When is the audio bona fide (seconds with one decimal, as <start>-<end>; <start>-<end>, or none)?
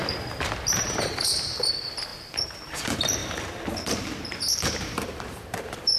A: 3.2-4.3